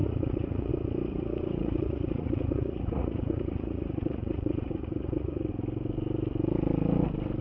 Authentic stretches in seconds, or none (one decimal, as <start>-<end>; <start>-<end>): 0.7-1.1; 5.5-7.4